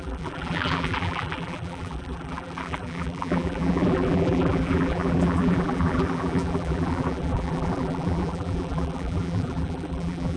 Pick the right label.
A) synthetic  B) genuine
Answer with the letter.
A